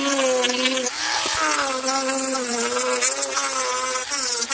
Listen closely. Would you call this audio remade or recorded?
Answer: recorded